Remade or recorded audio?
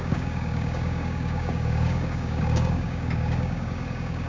remade